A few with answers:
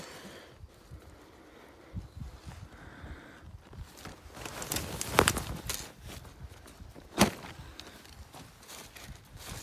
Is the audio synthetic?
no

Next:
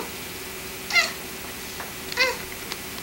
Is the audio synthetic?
no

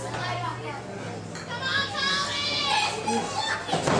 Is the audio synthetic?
no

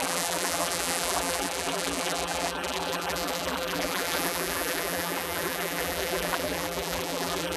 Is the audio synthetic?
yes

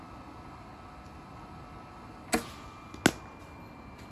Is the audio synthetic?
no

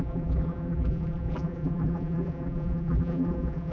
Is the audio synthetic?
yes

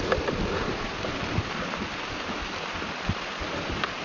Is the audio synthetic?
no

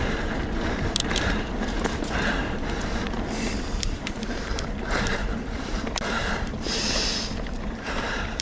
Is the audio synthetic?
yes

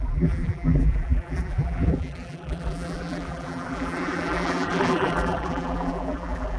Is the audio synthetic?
yes